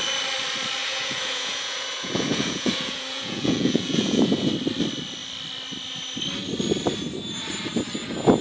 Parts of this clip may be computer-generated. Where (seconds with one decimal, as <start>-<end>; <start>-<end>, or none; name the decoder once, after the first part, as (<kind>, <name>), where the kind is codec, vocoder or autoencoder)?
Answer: 0.8-4.5 (vocoder, Vocos)